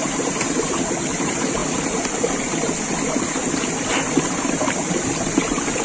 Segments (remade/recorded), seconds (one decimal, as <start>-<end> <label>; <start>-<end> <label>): 0.0-1.2 remade; 1.2-5.8 recorded